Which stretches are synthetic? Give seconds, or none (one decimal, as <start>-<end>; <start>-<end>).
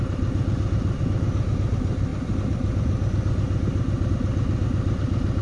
none